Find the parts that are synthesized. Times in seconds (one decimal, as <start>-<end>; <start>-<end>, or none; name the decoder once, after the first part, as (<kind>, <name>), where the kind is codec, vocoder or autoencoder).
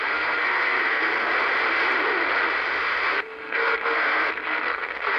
0.0-1.3 (codec, SNAC); 2.8-5.2